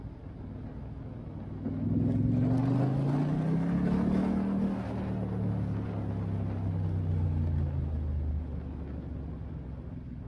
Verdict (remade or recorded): recorded